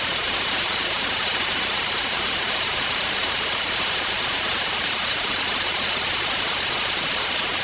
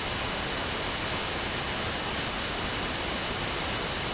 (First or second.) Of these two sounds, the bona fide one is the second